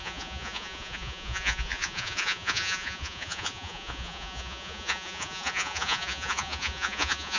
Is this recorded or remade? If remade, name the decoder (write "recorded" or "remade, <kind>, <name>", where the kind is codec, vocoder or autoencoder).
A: remade, vocoder, Vocos